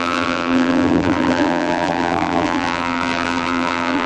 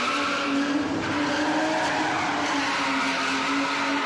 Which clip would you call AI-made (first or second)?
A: first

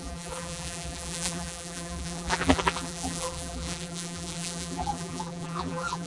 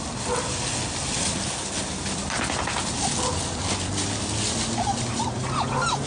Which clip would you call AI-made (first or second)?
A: first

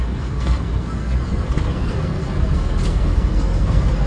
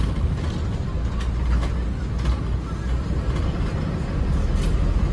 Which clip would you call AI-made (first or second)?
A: first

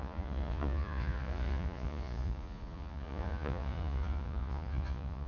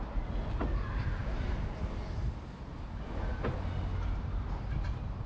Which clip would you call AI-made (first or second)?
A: first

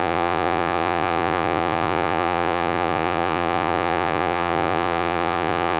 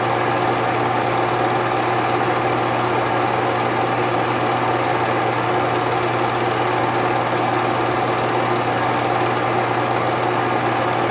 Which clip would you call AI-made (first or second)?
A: first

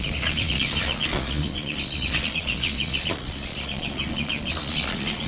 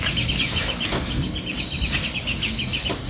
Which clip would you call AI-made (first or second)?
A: first